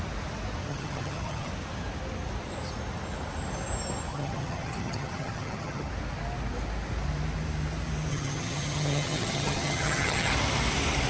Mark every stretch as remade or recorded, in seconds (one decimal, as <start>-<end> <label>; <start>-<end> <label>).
0.0-0.7 recorded; 0.7-1.5 remade; 1.5-4.1 recorded; 4.1-5.9 remade; 5.9-8.1 recorded; 8.1-10.3 remade; 10.3-11.1 recorded